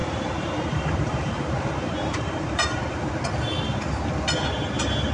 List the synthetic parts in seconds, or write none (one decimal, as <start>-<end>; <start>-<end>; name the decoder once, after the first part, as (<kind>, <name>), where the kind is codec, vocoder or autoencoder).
0.0-3.1 (vocoder, BigVGAN v2)